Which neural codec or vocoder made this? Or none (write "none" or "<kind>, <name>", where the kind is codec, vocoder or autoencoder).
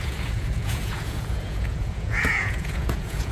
vocoder, Vocos